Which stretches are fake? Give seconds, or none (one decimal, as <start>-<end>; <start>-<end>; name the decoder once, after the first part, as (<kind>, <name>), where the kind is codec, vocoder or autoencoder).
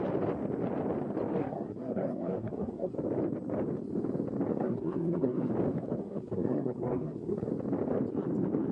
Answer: 1.4-2.9 (codec, SNAC); 4.5-5.5; 6.0-7.5